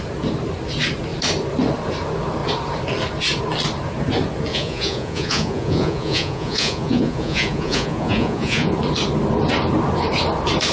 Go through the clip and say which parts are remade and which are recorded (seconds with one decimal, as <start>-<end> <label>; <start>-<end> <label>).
0.0-4.5 recorded; 4.5-8.7 remade; 8.7-10.7 recorded